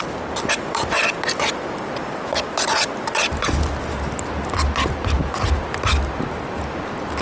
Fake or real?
real